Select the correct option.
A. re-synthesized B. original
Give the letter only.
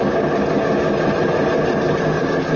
B